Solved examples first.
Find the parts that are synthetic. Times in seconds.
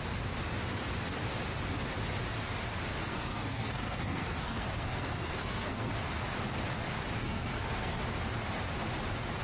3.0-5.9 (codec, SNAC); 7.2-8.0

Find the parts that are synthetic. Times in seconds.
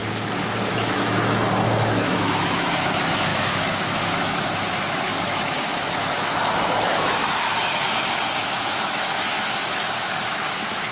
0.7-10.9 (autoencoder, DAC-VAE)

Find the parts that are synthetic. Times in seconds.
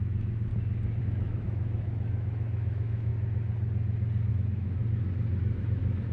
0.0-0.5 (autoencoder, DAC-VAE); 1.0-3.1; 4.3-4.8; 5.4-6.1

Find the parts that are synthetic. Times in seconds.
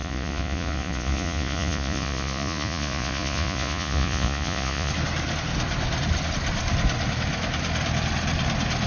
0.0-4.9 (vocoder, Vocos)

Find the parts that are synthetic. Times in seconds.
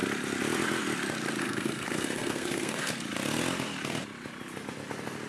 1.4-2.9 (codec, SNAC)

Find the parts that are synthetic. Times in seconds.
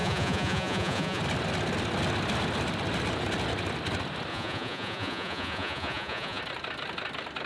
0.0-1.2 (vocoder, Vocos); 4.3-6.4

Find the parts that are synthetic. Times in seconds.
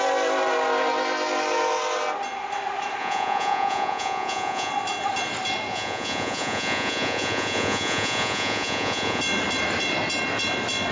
3.0-4.7 (vocoder, Vocos); 5.7-9.2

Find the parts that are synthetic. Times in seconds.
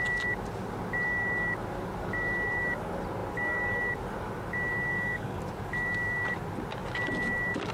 4.9-5.4 (codec, DAC)